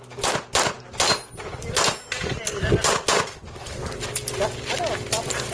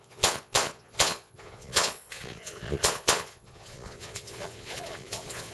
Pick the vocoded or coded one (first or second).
second